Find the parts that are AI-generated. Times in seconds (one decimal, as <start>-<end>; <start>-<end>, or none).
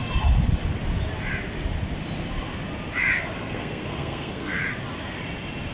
3.4-4.6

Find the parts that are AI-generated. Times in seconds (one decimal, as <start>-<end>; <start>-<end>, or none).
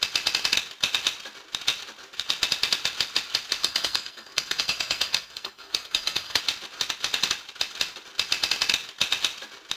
3.6-6.4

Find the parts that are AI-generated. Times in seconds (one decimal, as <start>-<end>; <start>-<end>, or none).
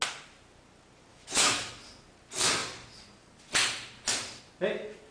1.1-1.7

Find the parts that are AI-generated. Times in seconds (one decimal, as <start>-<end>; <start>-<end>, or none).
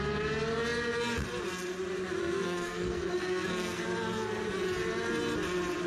2.2-3.8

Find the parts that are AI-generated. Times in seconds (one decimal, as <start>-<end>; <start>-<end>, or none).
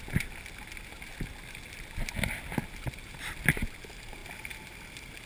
4.2-4.8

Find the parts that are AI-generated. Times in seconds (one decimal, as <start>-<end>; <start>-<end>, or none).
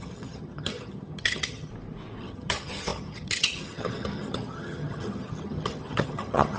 0.0-1.7; 2.2-6.6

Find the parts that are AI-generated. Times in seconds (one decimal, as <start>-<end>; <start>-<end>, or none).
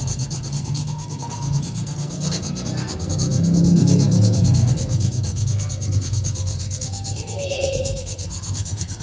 0.0-9.0